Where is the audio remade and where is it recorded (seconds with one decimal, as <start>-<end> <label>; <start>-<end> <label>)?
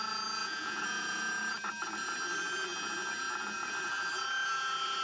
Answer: 0.0-0.4 recorded; 0.4-1.3 remade; 1.3-5.0 recorded